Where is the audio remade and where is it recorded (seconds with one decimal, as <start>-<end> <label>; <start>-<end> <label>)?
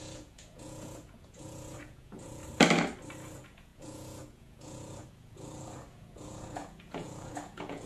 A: 0.0-2.4 remade; 2.4-3.3 recorded; 3.3-7.9 remade